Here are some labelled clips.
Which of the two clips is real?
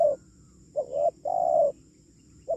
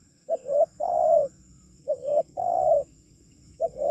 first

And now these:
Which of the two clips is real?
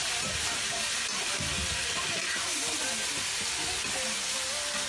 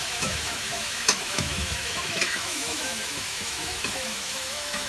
first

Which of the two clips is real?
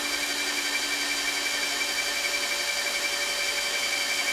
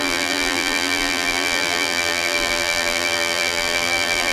first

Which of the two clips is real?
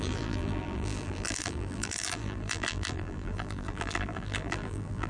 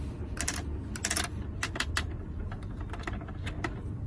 second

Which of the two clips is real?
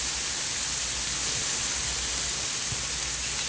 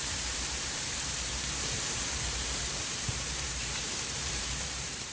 first